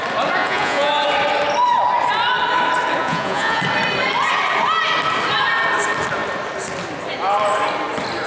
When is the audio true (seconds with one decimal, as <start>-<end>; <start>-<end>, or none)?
0.0-0.4; 0.9-3.0; 3.6-8.3